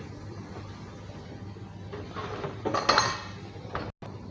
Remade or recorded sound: recorded